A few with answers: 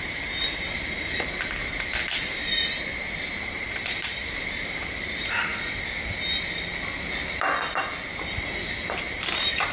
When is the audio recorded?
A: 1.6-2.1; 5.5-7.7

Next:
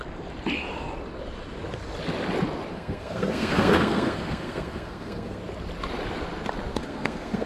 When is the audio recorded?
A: 0.0-2.7; 5.4-6.7

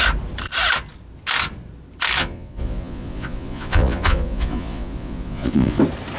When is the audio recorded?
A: 0.0-2.2; 5.8-6.2